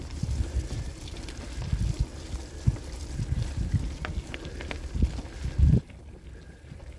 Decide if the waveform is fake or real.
real